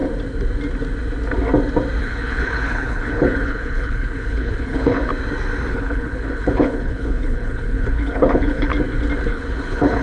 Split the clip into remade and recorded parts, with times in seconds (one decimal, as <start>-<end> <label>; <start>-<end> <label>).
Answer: 0.0-2.0 recorded; 2.0-5.1 remade; 5.1-5.7 recorded; 5.7-8.7 remade; 8.7-9.3 recorded; 9.3-10.0 remade